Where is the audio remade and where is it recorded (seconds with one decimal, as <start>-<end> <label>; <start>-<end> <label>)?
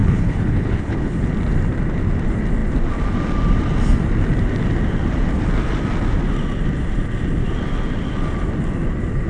0.0-1.3 remade; 1.3-9.3 recorded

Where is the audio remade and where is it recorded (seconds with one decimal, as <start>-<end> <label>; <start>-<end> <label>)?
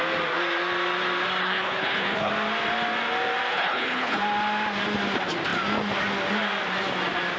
0.0-1.4 recorded; 1.4-2.3 remade; 2.3-3.5 recorded; 3.5-4.2 remade; 4.2-7.4 recorded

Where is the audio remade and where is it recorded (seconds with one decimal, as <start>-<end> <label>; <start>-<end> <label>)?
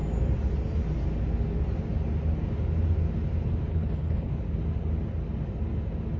0.0-3.7 recorded; 3.7-4.3 remade; 4.3-6.2 recorded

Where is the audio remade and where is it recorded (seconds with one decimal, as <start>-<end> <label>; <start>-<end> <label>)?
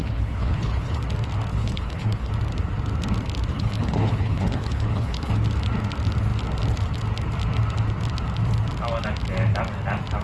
0.0-1.0 remade; 1.0-1.5 recorded; 1.5-2.3 remade; 2.3-3.5 recorded; 3.5-5.3 remade; 5.3-10.2 recorded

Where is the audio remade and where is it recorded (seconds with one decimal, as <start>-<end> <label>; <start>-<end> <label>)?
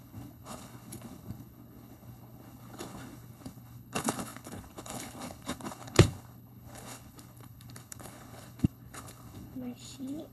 0.0-10.3 remade